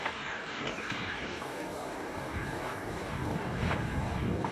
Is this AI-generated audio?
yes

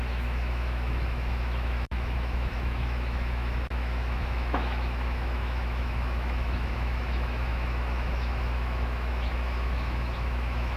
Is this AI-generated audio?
yes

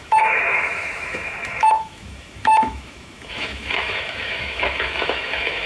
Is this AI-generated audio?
yes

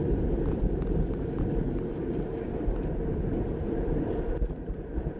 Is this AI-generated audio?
yes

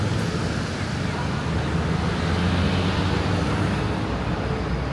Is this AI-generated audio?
no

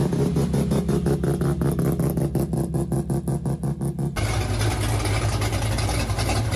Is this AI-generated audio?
no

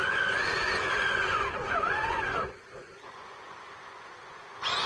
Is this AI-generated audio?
yes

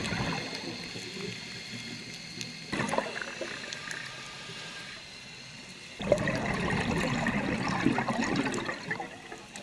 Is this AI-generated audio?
no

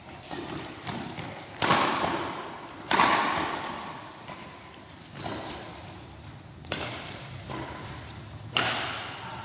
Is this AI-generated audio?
yes